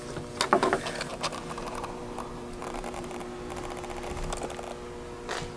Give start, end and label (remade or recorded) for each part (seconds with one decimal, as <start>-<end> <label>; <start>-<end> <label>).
0.0-1.1 recorded; 1.1-2.0 remade; 2.0-2.6 recorded; 2.6-3.2 remade; 3.2-5.6 recorded